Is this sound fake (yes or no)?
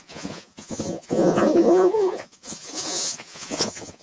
yes